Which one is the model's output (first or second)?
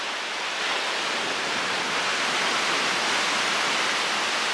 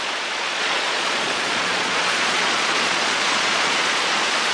second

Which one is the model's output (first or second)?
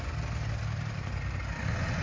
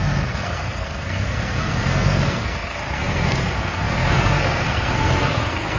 second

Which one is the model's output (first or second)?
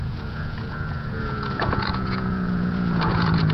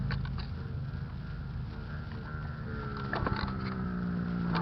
first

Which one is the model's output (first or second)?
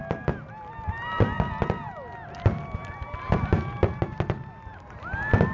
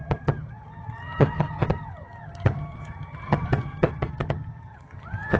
second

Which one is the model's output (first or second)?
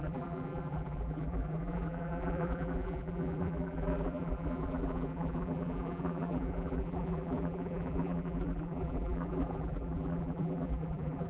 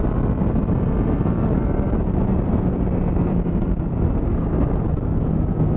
first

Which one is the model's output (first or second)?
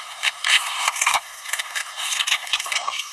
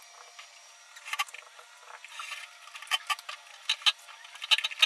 first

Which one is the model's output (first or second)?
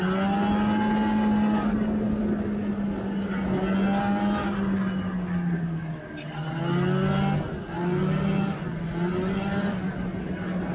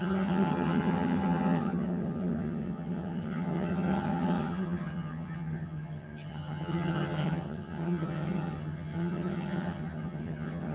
second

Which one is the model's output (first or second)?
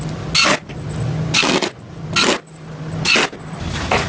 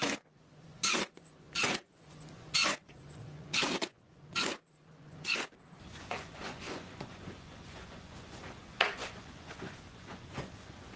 second